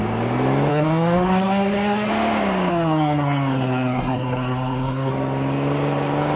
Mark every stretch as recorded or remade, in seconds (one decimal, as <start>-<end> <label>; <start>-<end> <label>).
0.0-0.7 recorded; 0.7-2.1 remade; 2.1-2.7 recorded; 2.7-5.1 remade; 5.1-6.4 recorded